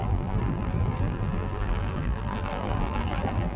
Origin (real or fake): fake